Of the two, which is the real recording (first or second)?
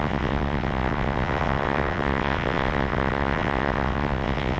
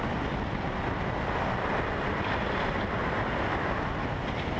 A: second